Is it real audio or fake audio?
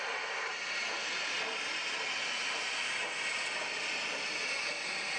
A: real